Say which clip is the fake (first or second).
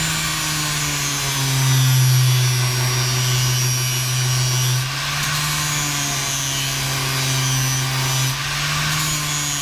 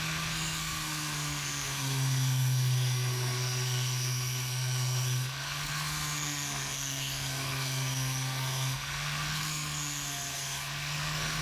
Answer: second